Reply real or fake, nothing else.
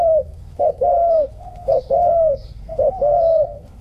fake